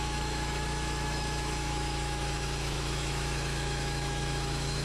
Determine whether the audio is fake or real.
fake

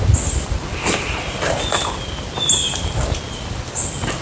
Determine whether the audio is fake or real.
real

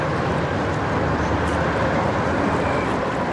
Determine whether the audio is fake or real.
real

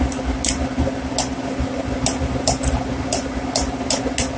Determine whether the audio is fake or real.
real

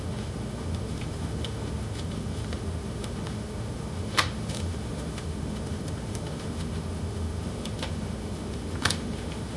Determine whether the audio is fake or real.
fake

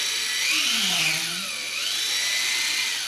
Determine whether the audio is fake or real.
real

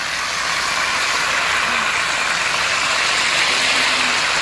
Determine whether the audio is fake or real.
real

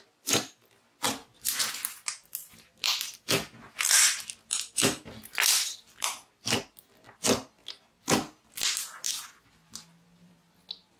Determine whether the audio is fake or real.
real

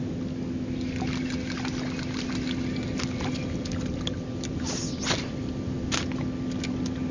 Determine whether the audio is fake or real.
real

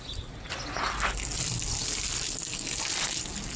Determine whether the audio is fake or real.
real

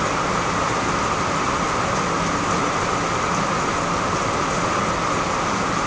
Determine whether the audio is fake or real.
real